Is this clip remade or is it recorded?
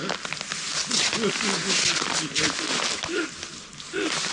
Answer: recorded